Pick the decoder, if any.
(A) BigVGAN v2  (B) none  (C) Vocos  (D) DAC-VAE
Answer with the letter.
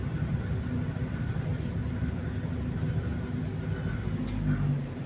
B